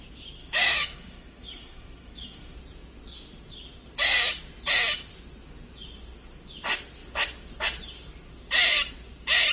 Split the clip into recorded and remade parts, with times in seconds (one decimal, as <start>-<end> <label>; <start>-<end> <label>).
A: 0.0-0.4 recorded; 0.4-2.6 remade; 2.6-9.5 recorded